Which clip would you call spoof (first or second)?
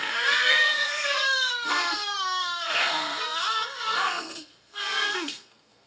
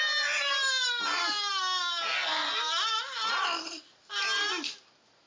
first